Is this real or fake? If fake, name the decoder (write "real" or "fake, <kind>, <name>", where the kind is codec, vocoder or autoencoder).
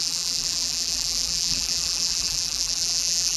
fake, vocoder, BigVGAN v2